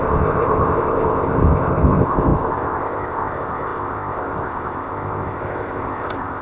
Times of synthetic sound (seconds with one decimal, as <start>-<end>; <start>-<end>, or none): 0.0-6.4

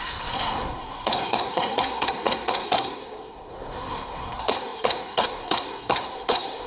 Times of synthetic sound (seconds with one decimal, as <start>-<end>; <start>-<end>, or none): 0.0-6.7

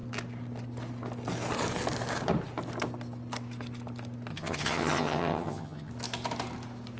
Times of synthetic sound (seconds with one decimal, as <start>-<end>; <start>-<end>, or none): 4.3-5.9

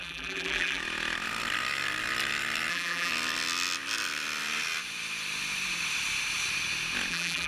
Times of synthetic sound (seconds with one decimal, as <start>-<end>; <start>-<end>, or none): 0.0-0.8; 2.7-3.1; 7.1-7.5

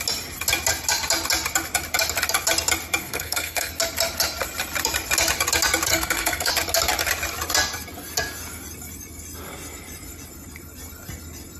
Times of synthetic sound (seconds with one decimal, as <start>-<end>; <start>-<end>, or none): 3.0-3.7; 5.9-6.5